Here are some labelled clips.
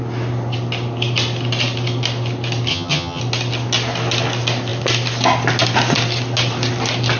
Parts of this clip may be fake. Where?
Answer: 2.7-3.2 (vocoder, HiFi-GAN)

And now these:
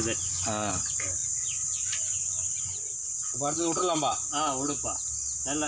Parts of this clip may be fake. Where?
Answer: 1.2-2.0 (vocoder, Vocos); 3.0-4.3

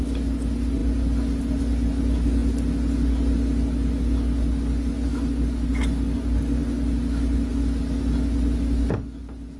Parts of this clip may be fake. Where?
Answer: none

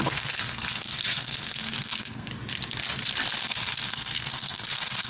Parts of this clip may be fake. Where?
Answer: 0.0-2.3 (codec, SNAC); 3.4-5.1

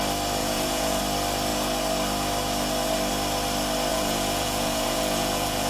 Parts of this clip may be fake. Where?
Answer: 0.4-1.0 (vocoder, Vocos); 3.9-5.7